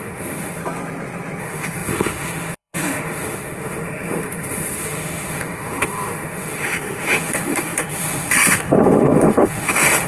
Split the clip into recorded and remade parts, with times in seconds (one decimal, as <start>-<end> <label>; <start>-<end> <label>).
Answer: 0.0-0.6 remade; 0.6-1.4 recorded; 1.4-10.1 remade